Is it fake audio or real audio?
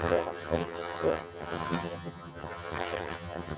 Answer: fake